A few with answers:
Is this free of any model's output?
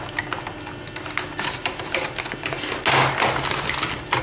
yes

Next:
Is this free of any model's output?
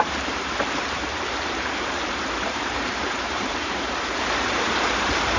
no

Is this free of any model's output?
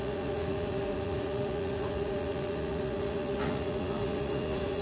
no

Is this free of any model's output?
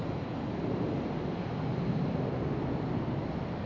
yes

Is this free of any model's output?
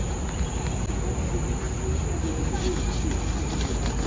yes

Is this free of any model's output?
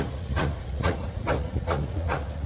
no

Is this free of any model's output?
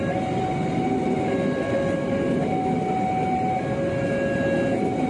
yes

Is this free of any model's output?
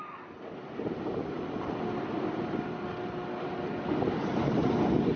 yes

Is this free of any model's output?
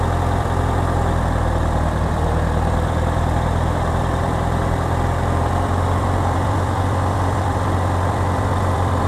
no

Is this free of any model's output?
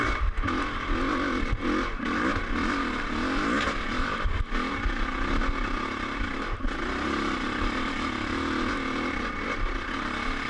yes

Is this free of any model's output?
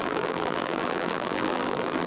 no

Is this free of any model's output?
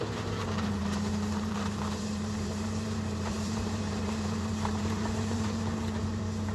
no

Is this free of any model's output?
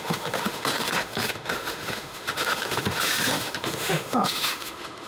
no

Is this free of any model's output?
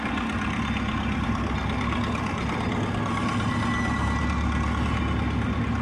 yes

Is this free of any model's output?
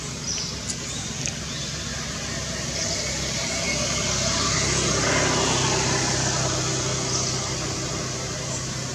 yes